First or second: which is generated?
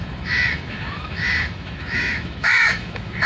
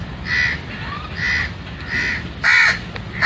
first